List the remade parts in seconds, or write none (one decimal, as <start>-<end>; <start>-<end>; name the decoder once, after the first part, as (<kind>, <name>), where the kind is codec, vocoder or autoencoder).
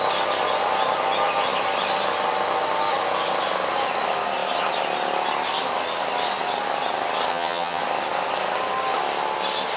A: 7.3-7.8 (vocoder, HiFi-GAN)